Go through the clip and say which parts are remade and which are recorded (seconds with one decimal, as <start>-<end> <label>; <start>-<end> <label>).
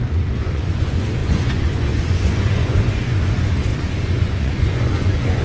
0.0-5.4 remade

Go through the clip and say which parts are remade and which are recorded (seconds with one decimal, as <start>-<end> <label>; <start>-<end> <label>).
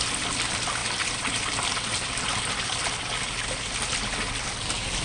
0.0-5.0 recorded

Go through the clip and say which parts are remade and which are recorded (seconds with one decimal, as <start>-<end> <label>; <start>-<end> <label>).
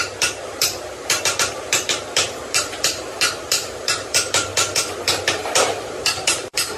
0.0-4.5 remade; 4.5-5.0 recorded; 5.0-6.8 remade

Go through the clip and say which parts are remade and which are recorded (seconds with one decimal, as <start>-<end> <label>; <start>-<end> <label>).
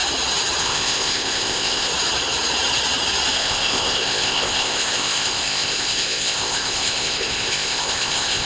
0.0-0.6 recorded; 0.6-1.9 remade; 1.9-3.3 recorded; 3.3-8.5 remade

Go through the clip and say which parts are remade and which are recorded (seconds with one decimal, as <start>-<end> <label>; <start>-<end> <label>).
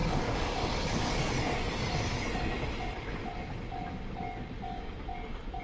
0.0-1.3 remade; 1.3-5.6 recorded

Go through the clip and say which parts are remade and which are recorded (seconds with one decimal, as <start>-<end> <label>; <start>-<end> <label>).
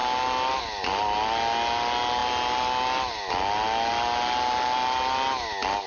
0.0-5.9 recorded